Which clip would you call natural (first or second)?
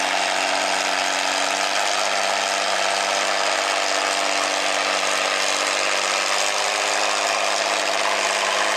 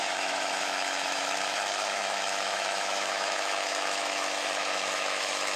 first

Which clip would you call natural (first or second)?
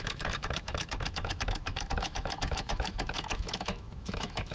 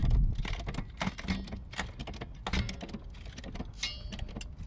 second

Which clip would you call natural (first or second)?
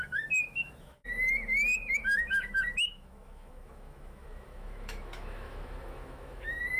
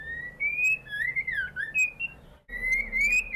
second